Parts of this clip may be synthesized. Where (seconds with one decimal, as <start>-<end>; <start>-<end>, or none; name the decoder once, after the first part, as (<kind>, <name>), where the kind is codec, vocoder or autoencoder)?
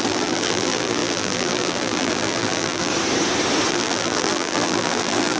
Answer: 0.0-2.9 (vocoder, BigVGAN v2); 3.7-5.4